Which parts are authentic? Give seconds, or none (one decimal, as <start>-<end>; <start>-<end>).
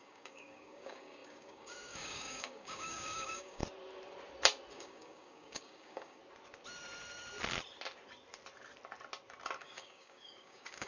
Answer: 3.6-4.7; 6.2-9.6